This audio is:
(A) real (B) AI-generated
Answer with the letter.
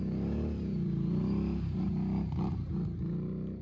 B